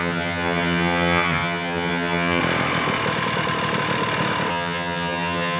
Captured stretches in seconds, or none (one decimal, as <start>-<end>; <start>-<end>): 2.4-4.5